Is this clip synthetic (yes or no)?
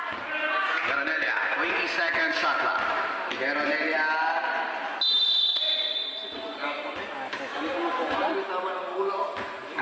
no